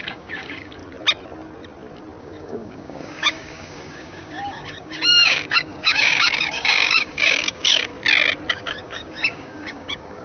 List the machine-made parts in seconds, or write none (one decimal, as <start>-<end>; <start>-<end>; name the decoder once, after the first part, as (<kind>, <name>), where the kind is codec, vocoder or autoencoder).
0.0-0.8 (codec, DAC); 2.2-7.9; 8.5-10.2